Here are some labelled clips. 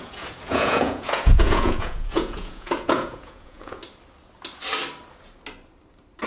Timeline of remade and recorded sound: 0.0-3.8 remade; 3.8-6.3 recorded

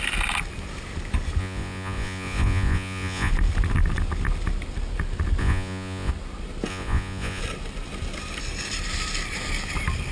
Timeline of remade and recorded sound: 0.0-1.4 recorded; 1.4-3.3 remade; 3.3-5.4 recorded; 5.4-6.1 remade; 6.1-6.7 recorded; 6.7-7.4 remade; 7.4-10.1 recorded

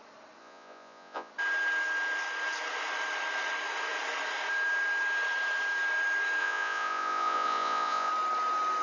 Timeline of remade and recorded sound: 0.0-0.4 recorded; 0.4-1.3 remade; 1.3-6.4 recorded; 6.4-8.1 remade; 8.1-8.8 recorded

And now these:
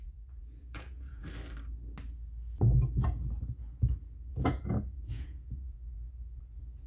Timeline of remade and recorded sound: 0.0-1.2 remade; 1.2-4.3 recorded; 4.3-6.9 remade